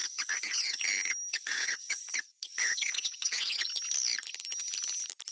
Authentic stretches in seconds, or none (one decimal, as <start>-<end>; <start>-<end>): 0.8-1.3; 3.6-5.3